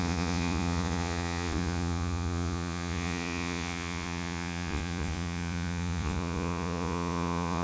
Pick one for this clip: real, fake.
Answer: fake